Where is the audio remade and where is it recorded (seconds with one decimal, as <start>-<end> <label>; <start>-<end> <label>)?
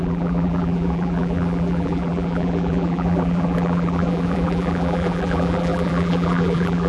0.0-6.9 remade